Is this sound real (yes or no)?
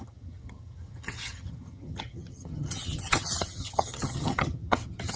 no